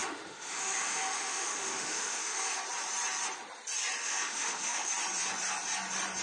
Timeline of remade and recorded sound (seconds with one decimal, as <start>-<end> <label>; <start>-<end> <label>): 0.0-2.5 remade; 2.5-4.0 recorded; 4.0-4.9 remade; 4.9-6.2 recorded